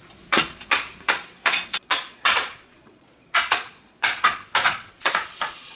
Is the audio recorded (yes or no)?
no